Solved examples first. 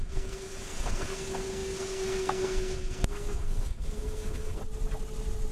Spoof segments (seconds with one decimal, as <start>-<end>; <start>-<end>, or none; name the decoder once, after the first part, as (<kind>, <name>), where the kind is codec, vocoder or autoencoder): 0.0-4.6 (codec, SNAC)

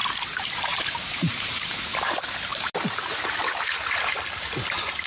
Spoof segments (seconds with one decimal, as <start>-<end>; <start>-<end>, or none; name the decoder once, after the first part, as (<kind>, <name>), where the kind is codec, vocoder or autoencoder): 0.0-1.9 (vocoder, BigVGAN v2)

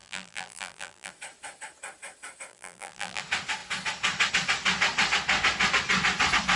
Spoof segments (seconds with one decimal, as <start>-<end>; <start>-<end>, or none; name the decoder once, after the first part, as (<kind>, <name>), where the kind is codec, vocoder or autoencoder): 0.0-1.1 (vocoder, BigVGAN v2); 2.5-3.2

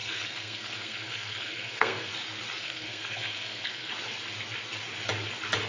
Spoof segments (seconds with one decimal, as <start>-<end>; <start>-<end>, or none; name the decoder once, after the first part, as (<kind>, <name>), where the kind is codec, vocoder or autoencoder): 0.0-2.1 (codec, SNAC); 2.6-3.9